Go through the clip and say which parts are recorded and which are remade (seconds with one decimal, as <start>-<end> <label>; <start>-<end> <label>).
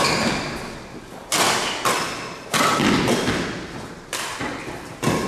0.0-5.3 recorded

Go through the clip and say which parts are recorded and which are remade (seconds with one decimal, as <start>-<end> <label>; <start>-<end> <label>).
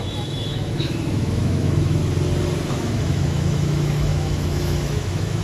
0.0-2.0 remade; 2.0-2.7 recorded; 2.7-5.4 remade